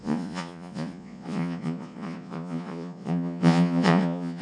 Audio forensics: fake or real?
fake